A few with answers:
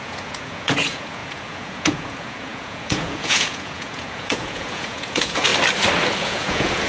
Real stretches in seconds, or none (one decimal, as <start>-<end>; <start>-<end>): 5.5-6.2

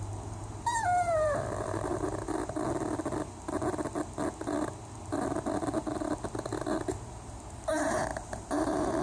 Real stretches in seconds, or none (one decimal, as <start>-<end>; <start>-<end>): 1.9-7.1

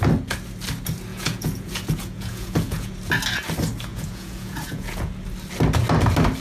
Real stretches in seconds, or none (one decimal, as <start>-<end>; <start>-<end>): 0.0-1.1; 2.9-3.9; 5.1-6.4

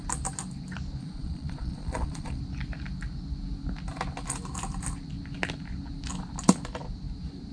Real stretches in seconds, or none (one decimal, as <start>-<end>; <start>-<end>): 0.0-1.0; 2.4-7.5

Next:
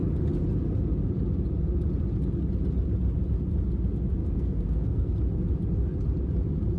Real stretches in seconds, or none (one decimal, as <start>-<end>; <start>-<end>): 0.0-4.2; 5.2-6.8

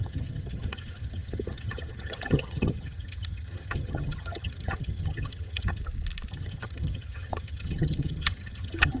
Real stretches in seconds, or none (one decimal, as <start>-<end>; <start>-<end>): 5.8-6.3

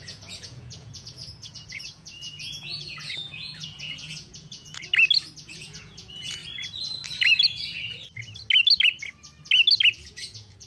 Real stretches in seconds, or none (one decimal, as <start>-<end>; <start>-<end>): 4.9-5.4; 6.4-10.1

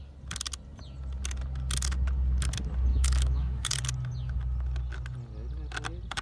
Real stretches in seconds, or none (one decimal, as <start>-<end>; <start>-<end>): 0.0-2.9; 3.7-6.2